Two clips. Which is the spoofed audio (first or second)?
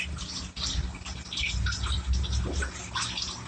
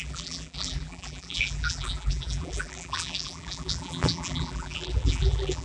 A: second